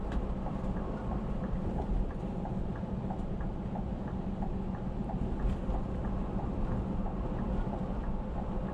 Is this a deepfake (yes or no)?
yes